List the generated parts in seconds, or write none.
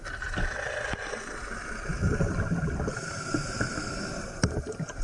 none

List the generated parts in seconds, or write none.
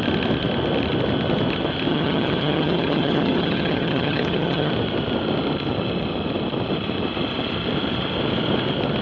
1.9-4.7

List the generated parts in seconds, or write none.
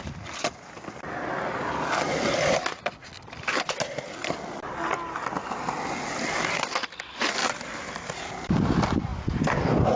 7.4-8.6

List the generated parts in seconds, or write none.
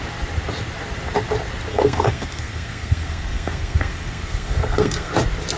1.7-5.1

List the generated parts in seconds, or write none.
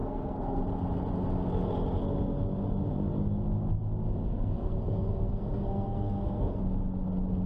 0.0-0.6; 4.2-6.6